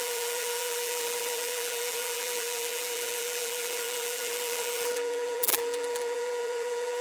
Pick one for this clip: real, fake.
fake